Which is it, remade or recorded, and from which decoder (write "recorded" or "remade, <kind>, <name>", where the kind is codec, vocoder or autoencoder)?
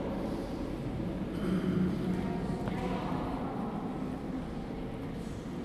recorded